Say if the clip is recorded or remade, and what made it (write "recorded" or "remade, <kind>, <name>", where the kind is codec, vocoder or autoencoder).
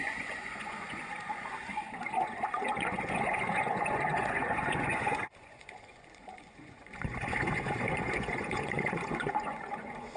remade, vocoder, Vocos